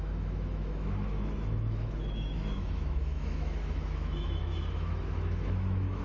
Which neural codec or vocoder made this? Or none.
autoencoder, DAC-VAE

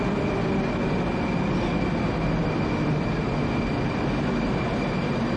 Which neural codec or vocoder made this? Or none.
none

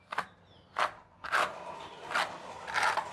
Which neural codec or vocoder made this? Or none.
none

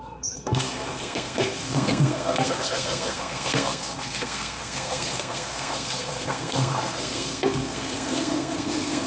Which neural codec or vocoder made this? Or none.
codec, SNAC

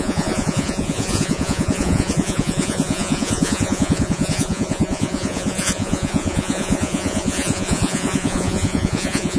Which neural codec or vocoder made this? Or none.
vocoder, Vocos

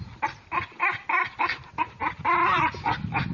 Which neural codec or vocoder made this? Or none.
vocoder, BigVGAN v2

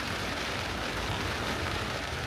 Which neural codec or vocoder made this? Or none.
vocoder, BigVGAN v2